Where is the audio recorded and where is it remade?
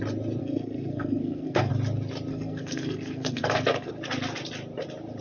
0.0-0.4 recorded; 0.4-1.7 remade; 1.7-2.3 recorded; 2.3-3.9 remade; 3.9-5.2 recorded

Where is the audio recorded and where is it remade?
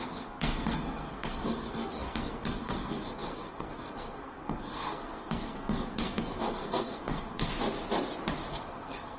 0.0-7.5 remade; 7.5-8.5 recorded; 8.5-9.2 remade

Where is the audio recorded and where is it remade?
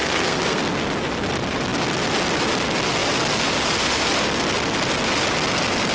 0.0-0.6 remade; 0.6-5.9 recorded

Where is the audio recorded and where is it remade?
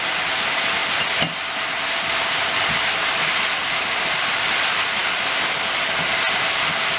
0.0-7.0 recorded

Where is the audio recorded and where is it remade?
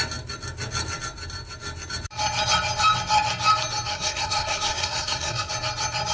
0.0-3.9 recorded; 3.9-5.5 remade; 5.5-6.1 recorded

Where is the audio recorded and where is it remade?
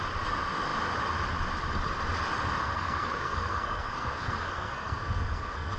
0.0-2.6 recorded; 2.6-5.8 remade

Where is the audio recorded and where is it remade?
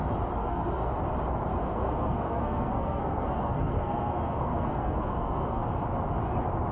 0.0-0.4 recorded; 0.4-0.9 remade; 0.9-1.6 recorded; 1.6-5.6 remade; 5.6-6.7 recorded